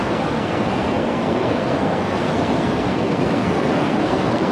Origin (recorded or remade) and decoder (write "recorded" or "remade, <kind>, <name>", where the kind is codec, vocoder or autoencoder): remade, codec, SNAC